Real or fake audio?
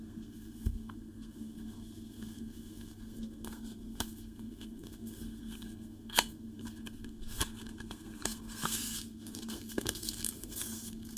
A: fake